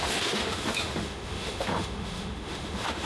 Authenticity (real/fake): fake